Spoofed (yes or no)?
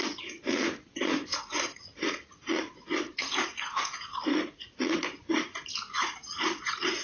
yes